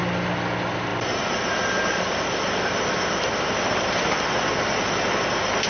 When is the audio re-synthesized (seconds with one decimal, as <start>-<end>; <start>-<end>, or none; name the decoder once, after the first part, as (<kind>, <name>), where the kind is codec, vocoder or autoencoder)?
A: none